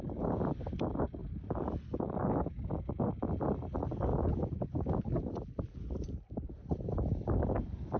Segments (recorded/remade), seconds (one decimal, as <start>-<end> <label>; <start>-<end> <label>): 0.0-1.2 remade; 1.2-2.9 recorded; 2.9-4.1 remade; 4.1-6.5 recorded; 6.5-8.0 remade